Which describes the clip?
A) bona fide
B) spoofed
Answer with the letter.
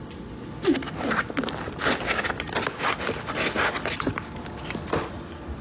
A